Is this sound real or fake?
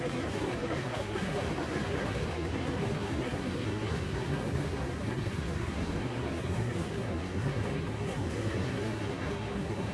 fake